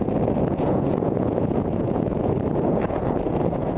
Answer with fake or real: fake